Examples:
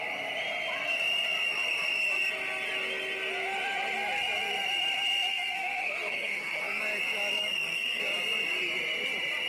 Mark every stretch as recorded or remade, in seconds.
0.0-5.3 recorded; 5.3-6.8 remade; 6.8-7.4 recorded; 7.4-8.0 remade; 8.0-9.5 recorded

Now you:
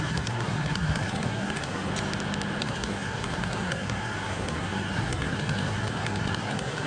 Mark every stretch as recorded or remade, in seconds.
0.0-1.9 remade; 1.9-2.6 recorded; 2.6-6.9 remade

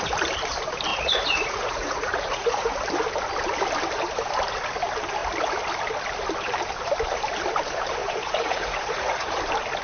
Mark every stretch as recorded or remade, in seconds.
0.0-0.9 recorded; 0.9-2.7 remade; 2.7-8.0 recorded; 8.0-9.4 remade; 9.4-9.8 recorded

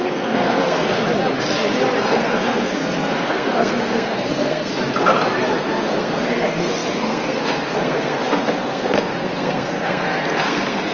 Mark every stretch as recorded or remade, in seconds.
0.0-1.0 remade; 1.0-2.0 recorded; 2.0-4.8 remade; 4.8-5.6 recorded; 5.6-10.9 remade

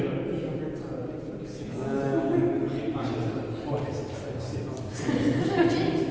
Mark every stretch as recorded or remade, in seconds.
0.0-6.1 recorded

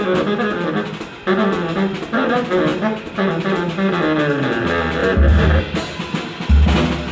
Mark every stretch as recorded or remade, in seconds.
0.0-7.1 recorded

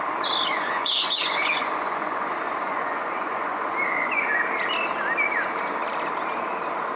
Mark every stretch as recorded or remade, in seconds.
0.0-0.5 recorded; 0.5-4.4 remade; 4.4-7.0 recorded

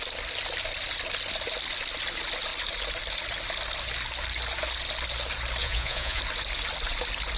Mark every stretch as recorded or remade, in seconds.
0.0-5.6 recorded; 5.6-6.2 remade; 6.2-7.4 recorded